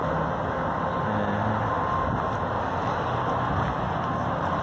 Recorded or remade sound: recorded